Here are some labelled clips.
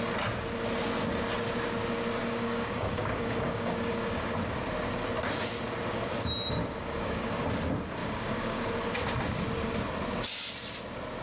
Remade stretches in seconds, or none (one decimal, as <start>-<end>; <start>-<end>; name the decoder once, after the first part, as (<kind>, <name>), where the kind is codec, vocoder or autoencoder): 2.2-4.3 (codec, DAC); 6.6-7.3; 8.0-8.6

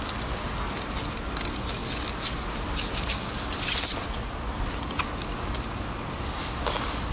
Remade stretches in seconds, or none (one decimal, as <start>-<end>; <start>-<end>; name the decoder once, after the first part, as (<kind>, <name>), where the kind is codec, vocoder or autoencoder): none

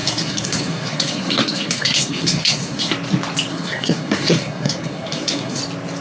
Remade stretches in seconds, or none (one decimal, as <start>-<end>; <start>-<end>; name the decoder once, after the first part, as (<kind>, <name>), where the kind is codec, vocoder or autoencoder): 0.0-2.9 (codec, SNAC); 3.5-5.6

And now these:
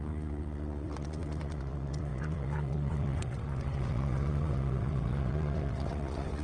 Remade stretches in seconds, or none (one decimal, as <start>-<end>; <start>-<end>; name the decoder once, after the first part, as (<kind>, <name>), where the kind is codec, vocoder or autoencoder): 0.0-6.4 (vocoder, WaveNeXt)